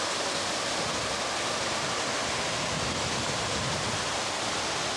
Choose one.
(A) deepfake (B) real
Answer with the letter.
B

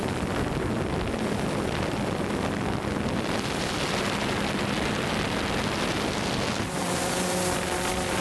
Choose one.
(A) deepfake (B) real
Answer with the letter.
B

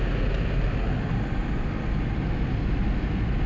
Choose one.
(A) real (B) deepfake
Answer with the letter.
A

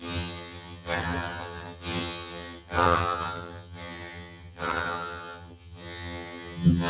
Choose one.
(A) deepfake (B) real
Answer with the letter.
A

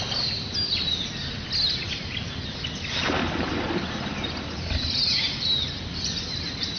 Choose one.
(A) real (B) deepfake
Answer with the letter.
A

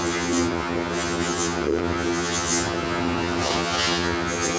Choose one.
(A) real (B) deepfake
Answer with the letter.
B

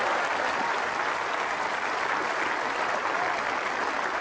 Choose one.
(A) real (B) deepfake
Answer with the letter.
A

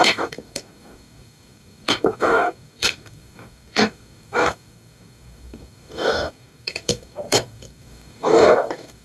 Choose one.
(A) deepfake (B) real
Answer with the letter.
A